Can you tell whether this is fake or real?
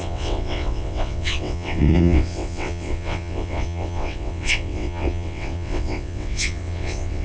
fake